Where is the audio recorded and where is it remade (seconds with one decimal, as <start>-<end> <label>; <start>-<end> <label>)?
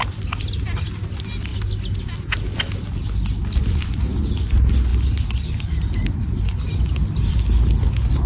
0.0-8.3 recorded